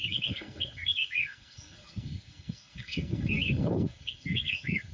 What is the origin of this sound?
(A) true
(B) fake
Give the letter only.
B